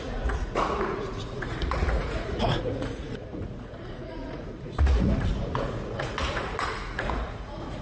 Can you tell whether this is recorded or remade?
remade